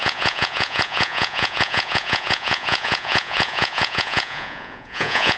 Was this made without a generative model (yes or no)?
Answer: no